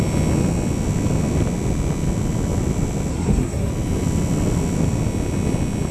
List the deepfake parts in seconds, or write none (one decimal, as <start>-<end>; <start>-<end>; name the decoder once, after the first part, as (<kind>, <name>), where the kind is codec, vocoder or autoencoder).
3.1-3.7 (codec, SNAC)